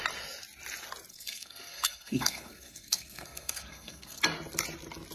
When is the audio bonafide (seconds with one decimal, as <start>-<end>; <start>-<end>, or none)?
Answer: 0.0-1.1; 4.2-5.1